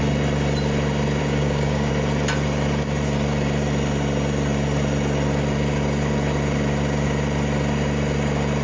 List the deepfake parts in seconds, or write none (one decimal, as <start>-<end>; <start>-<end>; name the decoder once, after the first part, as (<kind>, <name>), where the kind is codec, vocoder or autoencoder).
1.2-1.9 (codec, DAC)